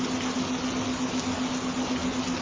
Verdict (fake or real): real